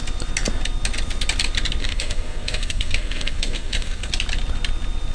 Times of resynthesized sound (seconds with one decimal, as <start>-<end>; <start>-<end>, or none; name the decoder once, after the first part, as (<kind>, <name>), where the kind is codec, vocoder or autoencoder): 1.8-4.1 (codec, SNAC)